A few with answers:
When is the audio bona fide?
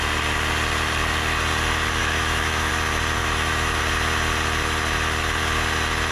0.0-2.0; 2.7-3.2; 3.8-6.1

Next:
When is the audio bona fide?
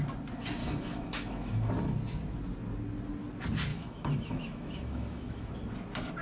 0.0-0.6; 1.7-3.7; 5.5-6.2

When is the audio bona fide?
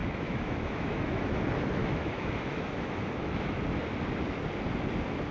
1.4-1.8; 3.6-5.3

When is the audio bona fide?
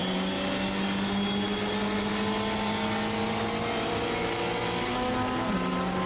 0.0-6.1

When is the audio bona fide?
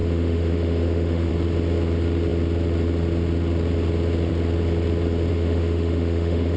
1.3-5.3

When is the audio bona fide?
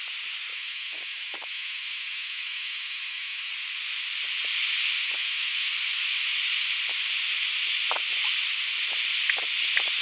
0.0-0.5; 3.5-5.2; 5.7-10.0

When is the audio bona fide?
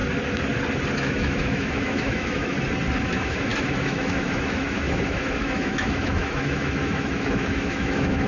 0.0-1.0; 2.5-3.0